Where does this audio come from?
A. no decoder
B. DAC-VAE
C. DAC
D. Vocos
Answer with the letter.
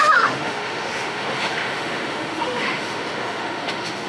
B